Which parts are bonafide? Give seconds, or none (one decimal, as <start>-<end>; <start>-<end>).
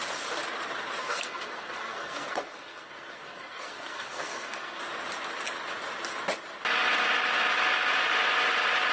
0.0-1.0; 4.8-8.9